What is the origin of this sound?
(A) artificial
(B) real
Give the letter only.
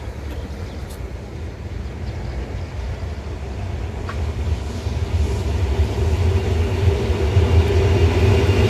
B